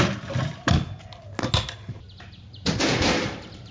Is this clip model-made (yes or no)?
no